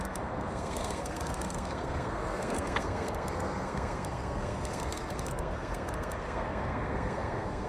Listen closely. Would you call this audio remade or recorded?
remade